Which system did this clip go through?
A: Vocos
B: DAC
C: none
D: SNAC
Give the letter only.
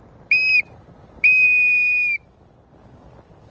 C